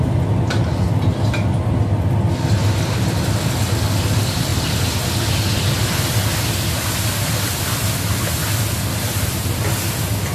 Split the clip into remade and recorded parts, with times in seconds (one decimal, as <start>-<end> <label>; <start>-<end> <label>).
0.0-10.3 recorded

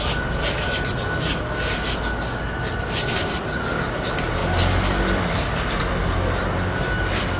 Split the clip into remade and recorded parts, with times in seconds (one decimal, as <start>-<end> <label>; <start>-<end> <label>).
0.0-7.4 recorded